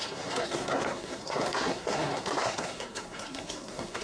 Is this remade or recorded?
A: remade